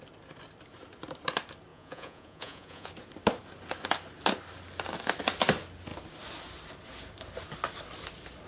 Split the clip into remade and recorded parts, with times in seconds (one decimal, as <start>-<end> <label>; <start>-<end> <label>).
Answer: 0.0-1.7 recorded; 1.7-2.9 remade; 2.9-8.5 recorded

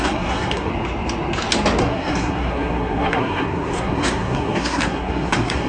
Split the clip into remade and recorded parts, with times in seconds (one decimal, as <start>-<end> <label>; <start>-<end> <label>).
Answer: 0.0-0.7 remade; 0.7-1.8 recorded; 1.8-5.7 remade